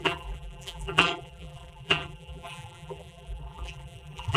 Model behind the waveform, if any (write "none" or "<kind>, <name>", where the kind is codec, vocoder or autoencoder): vocoder, BigVGAN v2